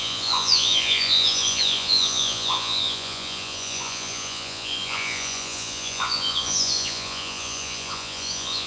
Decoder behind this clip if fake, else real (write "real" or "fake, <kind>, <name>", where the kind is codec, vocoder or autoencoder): fake, vocoder, Vocos